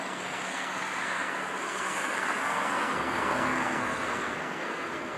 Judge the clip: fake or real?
fake